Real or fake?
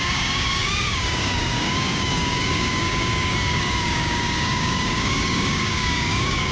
fake